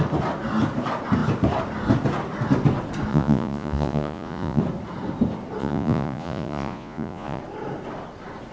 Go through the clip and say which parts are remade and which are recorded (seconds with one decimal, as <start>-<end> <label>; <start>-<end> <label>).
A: 0.0-3.1 recorded; 3.1-4.6 remade; 4.6-5.6 recorded; 5.6-7.4 remade; 7.4-8.5 recorded